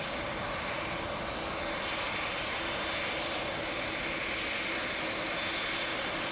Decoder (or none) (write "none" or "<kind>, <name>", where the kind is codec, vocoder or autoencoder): none